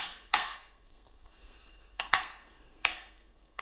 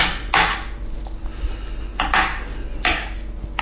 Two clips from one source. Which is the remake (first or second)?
first